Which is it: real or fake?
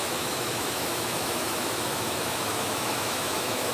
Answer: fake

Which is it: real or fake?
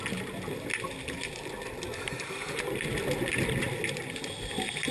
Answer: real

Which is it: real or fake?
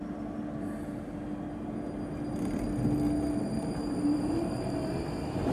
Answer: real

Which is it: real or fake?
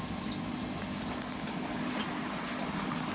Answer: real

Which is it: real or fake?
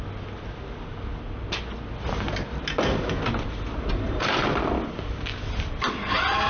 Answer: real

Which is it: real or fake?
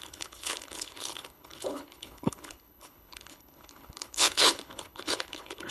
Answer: fake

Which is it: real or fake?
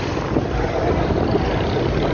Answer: real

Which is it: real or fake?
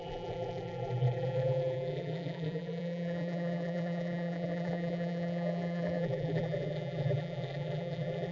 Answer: fake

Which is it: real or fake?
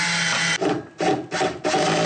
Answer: real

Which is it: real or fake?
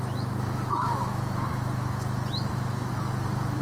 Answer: fake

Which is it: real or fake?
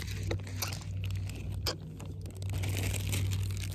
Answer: real